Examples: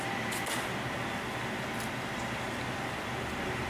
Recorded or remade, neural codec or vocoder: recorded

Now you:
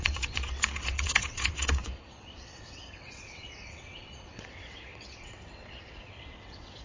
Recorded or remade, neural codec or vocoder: remade, vocoder, WaveNeXt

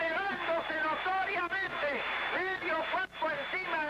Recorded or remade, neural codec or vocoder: remade, vocoder, BigVGAN v2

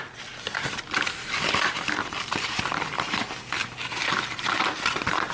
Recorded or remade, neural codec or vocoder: recorded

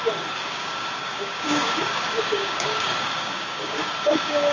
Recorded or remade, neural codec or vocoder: remade, codec, DAC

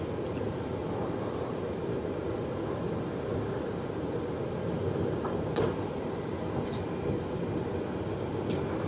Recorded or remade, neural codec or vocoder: recorded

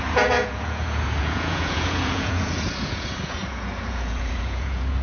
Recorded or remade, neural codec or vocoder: remade, vocoder, Vocos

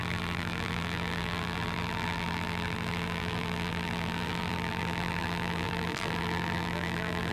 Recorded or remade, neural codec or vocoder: remade, vocoder, BigVGAN v2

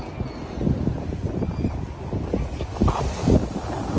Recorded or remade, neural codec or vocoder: recorded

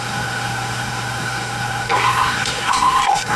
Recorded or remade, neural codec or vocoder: remade, codec, SNAC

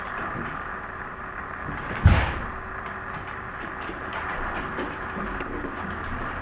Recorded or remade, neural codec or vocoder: recorded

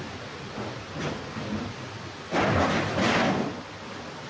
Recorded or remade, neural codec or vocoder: recorded